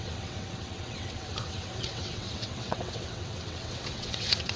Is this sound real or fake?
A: fake